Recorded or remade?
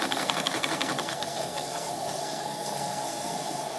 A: remade